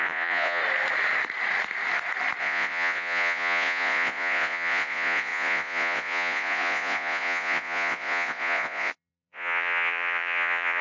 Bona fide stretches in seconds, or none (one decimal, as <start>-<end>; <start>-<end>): 0.6-2.4